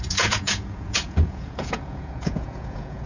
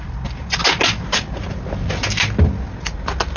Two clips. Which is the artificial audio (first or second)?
first